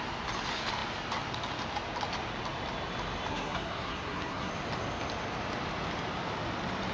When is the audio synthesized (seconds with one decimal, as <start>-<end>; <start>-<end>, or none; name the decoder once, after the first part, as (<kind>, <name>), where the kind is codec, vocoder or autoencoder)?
3.3-4.5 (codec, SNAC)